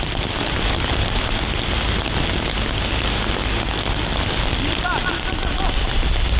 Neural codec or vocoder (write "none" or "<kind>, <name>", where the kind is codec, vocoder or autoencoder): none